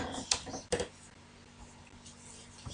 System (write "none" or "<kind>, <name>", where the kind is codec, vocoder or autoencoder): none